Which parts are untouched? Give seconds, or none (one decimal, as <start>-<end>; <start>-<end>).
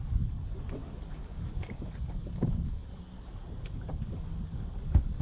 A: none